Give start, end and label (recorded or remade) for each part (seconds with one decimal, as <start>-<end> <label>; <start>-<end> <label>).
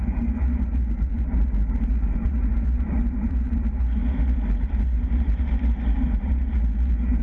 0.0-4.0 remade; 4.0-4.7 recorded; 4.7-7.2 remade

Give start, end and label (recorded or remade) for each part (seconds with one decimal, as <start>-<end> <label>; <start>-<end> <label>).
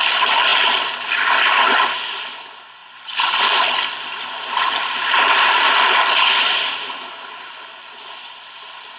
0.0-2.8 recorded; 2.8-3.4 remade; 3.4-5.1 recorded; 5.1-6.7 remade; 6.7-9.0 recorded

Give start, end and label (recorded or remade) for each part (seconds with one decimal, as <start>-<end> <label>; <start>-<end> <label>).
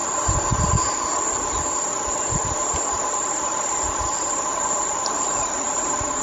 0.0-4.5 recorded; 4.5-6.2 remade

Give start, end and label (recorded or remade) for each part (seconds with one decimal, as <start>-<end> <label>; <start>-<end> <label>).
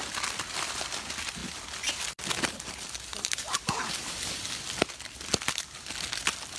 0.0-3.1 recorded; 3.1-4.2 remade; 4.2-6.6 recorded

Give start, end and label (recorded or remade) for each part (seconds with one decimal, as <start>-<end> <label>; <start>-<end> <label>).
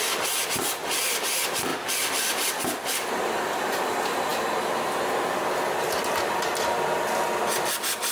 0.0-1.7 recorded; 1.7-3.1 remade; 3.1-8.1 recorded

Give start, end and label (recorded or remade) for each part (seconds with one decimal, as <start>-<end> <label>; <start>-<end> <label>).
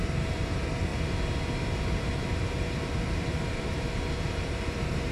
0.0-0.9 remade; 0.9-2.2 recorded; 2.2-5.1 remade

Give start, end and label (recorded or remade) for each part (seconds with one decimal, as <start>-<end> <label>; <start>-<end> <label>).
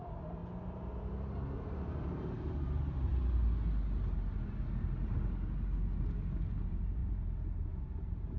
0.0-0.4 remade; 0.4-2.1 recorded; 2.1-3.1 remade; 3.1-6.6 recorded; 6.6-8.4 remade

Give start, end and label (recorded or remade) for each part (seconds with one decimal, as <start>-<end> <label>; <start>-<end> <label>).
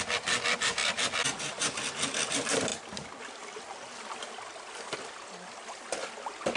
0.0-6.6 recorded